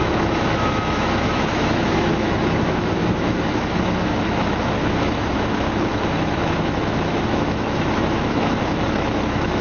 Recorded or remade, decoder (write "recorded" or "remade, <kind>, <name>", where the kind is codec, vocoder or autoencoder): remade, autoencoder, DAC-VAE